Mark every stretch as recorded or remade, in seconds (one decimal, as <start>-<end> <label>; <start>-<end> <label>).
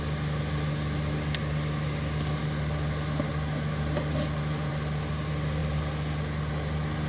0.0-7.1 recorded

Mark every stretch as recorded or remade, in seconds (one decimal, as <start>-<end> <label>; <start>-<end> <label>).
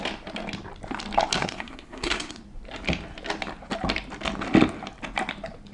0.0-1.4 recorded; 1.4-2.4 remade; 2.4-5.7 recorded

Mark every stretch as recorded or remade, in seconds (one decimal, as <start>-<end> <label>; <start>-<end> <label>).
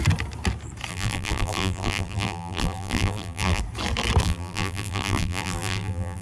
0.0-0.9 recorded; 0.9-3.6 remade; 3.6-4.2 recorded; 4.2-6.2 remade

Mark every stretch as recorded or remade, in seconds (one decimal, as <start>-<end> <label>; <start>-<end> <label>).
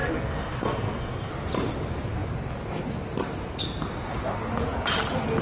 0.0-1.3 remade; 1.3-5.4 recorded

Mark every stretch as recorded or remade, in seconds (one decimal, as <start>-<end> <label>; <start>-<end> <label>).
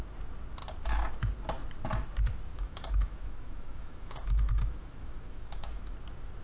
0.0-2.5 recorded; 2.5-5.9 remade; 5.9-6.4 recorded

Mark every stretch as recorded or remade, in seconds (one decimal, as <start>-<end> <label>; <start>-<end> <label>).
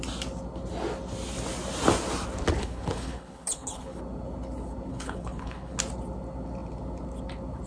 0.0-2.6 recorded; 2.6-4.0 remade; 4.0-4.9 recorded; 4.9-5.8 remade; 5.8-7.7 recorded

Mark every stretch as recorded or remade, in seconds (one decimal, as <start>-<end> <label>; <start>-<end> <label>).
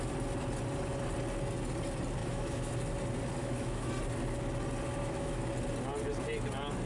0.0-2.2 recorded; 2.2-2.7 remade; 2.7-3.4 recorded; 3.4-3.9 remade; 3.9-5.0 recorded; 5.0-5.5 remade; 5.5-6.9 recorded